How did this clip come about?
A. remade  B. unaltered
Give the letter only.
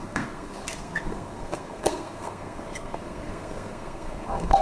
A